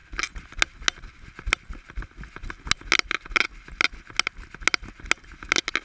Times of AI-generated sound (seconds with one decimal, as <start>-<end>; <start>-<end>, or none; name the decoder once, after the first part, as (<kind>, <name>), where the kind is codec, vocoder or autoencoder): none

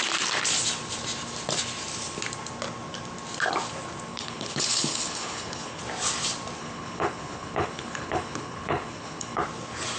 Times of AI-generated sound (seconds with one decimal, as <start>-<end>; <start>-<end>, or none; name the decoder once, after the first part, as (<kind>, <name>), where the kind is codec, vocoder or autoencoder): 4.1-5.8 (codec, HILCodec); 6.6-9.4

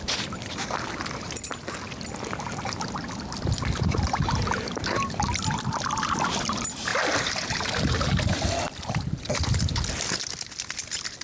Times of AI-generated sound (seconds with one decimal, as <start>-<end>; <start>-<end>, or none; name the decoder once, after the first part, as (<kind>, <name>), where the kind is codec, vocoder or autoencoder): 6.9-7.9 (vocoder, BigVGAN v2)

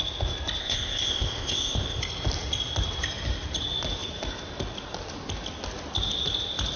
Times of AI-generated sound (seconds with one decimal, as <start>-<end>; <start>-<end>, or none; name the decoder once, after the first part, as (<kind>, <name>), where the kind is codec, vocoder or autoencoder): 0.6-2.0 (codec, ZipCodec)